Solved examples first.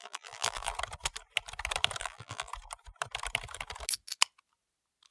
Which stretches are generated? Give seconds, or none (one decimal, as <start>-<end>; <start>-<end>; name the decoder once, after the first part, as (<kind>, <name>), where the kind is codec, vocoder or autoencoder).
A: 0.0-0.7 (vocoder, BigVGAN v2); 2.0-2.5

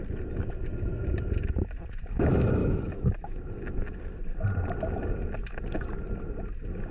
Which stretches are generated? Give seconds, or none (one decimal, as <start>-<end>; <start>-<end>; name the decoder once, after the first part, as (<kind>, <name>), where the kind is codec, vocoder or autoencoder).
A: 2.6-3.4 (autoencoder, DAC-VAE)

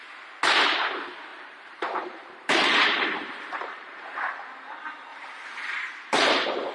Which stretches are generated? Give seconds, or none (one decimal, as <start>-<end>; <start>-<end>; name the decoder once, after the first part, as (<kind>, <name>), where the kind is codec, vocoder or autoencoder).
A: 1.3-4.3 (vocoder, BigVGAN v2); 5.1-6.3

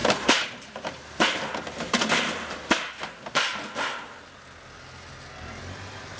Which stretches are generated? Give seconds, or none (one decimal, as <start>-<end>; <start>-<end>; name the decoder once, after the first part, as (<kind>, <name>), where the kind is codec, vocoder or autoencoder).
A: 0.0-1.5 (vocoder, BigVGAN v2)